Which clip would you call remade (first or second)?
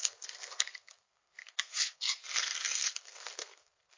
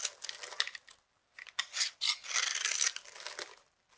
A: first